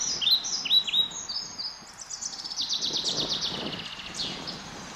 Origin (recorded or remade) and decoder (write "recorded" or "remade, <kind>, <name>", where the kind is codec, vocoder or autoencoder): recorded